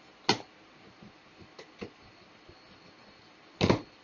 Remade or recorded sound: recorded